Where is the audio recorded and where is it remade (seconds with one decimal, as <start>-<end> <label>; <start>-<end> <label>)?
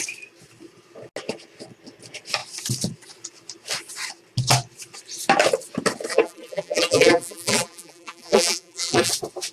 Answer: 0.0-6.1 recorded; 6.1-9.1 remade; 9.1-9.5 recorded